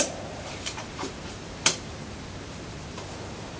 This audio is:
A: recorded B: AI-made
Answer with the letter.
B